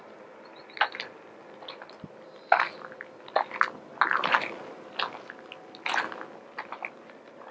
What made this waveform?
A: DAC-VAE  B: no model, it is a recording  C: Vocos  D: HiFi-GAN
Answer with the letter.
B